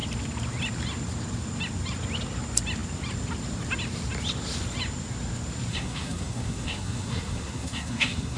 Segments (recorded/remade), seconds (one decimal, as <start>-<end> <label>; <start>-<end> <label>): 0.0-5.7 recorded; 5.7-8.4 remade